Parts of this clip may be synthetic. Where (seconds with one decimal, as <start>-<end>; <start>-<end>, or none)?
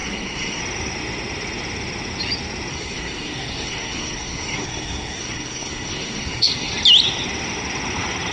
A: 0.0-0.6; 2.7-6.7